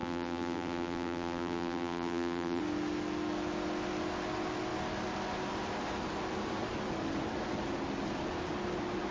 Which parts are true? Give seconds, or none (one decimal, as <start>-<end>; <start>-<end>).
2.6-9.1